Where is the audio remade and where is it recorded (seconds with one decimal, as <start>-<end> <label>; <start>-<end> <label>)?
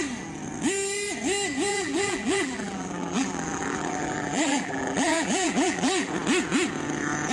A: 0.0-1.7 recorded; 1.7-6.1 remade; 6.1-7.3 recorded